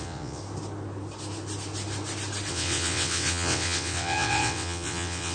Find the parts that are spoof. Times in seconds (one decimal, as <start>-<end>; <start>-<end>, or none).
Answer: 0.0-0.4; 2.5-5.3